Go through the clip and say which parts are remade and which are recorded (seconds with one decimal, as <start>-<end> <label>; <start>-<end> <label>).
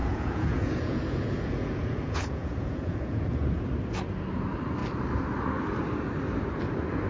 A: 0.0-3.7 remade; 3.7-7.1 recorded